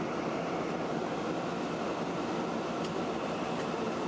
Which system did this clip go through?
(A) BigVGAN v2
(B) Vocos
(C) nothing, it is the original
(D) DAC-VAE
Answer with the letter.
C